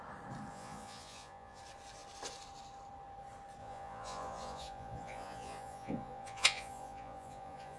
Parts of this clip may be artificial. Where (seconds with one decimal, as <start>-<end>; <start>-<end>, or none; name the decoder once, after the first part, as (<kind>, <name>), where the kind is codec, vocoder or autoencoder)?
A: 0.5-1.6 (vocoder, Vocos); 3.6-7.8